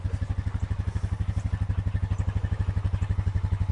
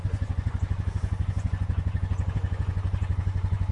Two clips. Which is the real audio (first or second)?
first